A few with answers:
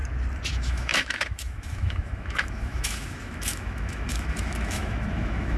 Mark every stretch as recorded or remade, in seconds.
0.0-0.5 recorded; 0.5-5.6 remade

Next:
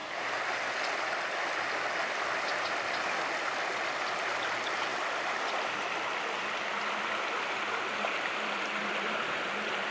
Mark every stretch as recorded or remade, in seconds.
0.0-9.9 recorded

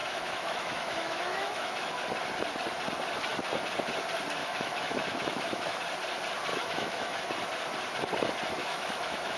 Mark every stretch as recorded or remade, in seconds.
0.0-2.0 remade; 2.0-4.4 recorded; 4.4-5.8 remade; 5.8-6.5 recorded; 6.5-7.2 remade; 7.2-8.6 recorded; 8.6-9.4 remade

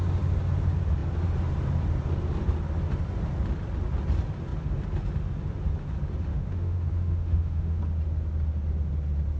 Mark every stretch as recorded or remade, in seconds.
0.0-6.3 recorded; 6.3-7.8 remade; 7.8-9.4 recorded

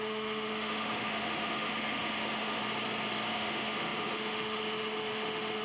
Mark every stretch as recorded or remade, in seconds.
0.0-2.6 remade; 2.6-3.3 recorded; 3.3-5.6 remade

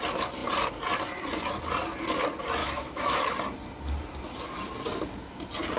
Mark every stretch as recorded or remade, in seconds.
0.0-2.6 recorded; 2.6-3.2 remade; 3.2-5.8 recorded